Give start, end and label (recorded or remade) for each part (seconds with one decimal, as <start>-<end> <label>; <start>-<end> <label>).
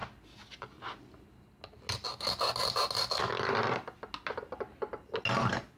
0.0-5.8 recorded